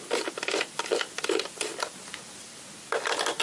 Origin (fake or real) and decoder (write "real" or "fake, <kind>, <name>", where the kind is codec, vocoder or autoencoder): real